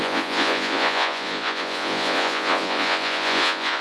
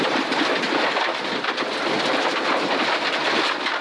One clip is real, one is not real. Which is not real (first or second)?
first